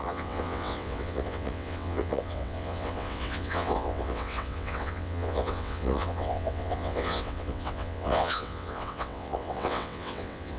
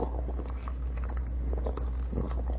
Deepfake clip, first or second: first